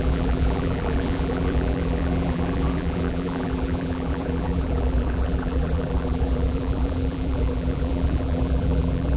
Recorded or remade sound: remade